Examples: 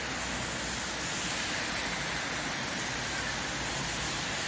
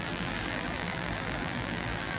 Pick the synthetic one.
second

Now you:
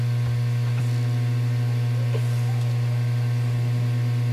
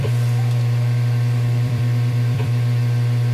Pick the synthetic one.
second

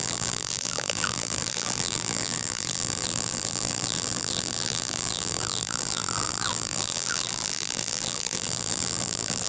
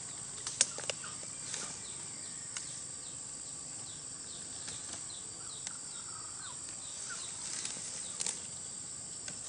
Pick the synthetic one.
first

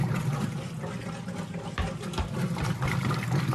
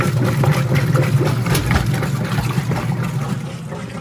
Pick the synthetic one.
first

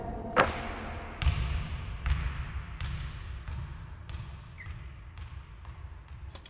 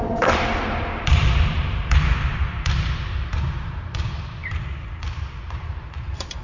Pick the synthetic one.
second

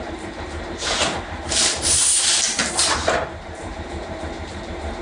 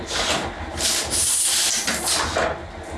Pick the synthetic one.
first